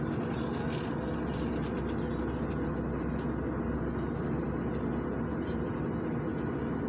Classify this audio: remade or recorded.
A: recorded